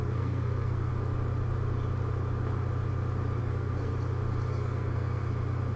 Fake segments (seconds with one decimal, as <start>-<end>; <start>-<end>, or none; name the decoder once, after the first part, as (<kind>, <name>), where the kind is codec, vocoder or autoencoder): 0.0-0.9 (codec, SNAC); 3.4-3.9; 4.5-5.2